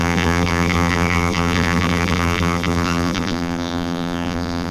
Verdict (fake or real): fake